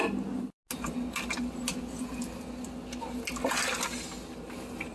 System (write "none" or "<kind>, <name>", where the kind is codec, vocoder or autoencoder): none